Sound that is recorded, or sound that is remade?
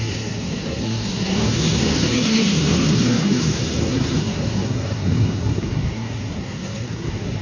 remade